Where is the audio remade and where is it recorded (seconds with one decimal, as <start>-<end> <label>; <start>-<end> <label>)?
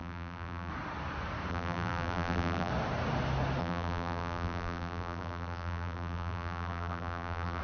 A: 0.0-0.7 remade; 0.7-1.5 recorded; 1.5-2.7 remade; 2.7-3.6 recorded; 3.6-7.6 remade